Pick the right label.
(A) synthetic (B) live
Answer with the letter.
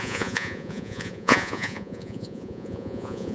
A